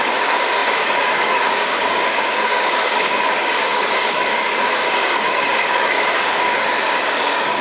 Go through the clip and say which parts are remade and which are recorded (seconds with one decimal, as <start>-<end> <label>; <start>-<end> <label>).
0.0-7.6 remade